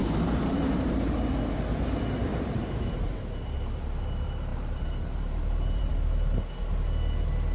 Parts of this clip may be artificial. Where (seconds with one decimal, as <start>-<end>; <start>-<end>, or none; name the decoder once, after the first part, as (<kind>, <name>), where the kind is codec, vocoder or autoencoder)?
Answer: 0.0-1.0 (vocoder, BigVGAN v2); 2.3-3.8; 4.5-5.9

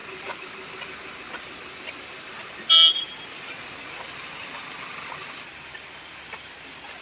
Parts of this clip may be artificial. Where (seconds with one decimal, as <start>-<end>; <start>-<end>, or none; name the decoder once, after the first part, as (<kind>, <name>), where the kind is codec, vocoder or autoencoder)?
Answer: none

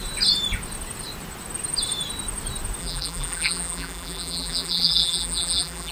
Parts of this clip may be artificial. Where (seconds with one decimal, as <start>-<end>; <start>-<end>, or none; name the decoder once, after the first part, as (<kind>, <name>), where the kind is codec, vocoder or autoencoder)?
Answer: 2.8-5.9 (vocoder, BigVGAN v2)